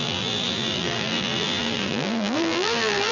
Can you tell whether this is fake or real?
fake